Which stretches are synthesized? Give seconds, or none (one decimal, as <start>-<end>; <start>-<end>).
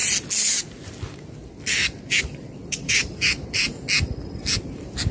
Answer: 2.2-3.6; 4.6-5.1